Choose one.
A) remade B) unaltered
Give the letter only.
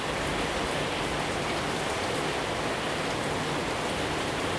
B